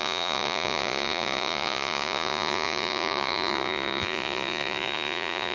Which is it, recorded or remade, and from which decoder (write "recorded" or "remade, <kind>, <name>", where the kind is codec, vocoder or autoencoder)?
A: remade, vocoder, Vocos